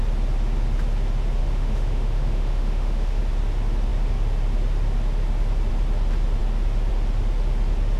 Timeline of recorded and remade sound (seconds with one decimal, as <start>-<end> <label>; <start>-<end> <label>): 0.0-1.4 recorded; 1.4-3.2 remade; 3.2-8.0 recorded